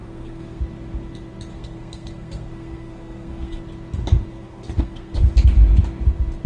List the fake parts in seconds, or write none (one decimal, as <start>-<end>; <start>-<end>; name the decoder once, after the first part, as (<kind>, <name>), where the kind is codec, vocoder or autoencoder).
0.0-0.6 (codec, SNAC); 1.5-3.6; 4.3-5.3